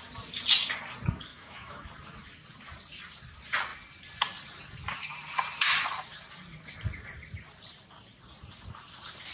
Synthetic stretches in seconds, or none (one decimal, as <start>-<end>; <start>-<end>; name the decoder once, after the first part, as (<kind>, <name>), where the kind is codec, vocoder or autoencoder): 1.3-1.9 (autoencoder, DAC-VAE)